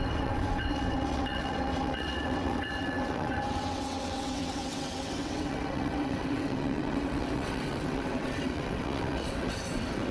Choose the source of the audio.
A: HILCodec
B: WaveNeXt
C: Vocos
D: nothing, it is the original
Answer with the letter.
B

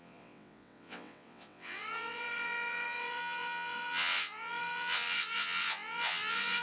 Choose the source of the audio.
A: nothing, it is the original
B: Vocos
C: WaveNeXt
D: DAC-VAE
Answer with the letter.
C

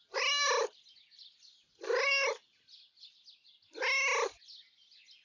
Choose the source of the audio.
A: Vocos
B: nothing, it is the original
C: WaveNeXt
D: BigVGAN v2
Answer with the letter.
B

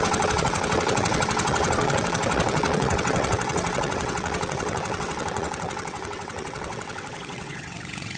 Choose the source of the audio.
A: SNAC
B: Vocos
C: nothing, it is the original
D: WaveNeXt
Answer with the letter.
D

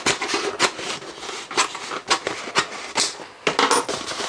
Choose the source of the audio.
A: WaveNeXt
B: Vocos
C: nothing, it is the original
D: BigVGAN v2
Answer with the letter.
C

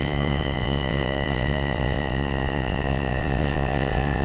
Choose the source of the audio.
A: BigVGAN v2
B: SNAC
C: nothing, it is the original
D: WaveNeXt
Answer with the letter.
D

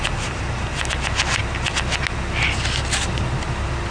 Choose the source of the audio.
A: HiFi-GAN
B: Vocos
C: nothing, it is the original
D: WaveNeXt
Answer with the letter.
C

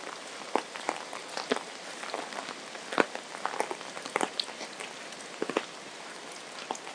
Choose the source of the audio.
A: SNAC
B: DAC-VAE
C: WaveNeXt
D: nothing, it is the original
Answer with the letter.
D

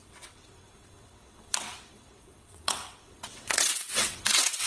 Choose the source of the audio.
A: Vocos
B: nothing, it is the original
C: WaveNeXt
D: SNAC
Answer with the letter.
C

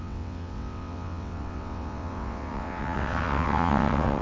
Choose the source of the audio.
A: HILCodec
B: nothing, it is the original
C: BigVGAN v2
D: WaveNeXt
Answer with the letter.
D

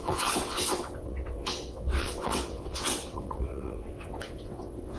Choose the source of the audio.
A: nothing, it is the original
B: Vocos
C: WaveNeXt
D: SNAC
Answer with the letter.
C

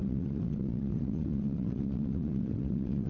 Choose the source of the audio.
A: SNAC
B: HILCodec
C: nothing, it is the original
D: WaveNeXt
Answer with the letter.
D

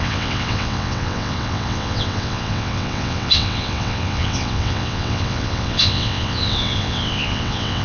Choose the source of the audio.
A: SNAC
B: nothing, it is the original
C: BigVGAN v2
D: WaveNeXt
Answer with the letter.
D